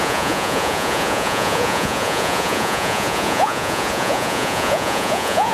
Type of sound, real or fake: fake